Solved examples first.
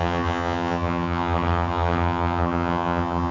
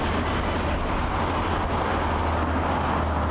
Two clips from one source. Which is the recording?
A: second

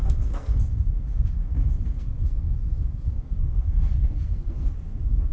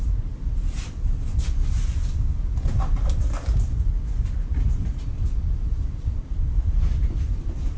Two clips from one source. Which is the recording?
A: second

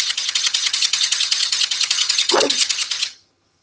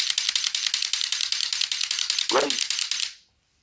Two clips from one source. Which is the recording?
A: second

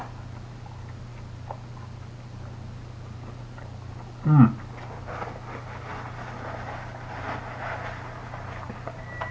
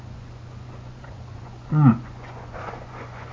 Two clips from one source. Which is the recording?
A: first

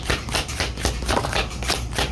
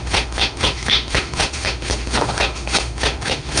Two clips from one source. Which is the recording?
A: first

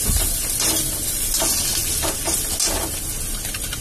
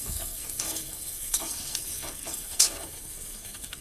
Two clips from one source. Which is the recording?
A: first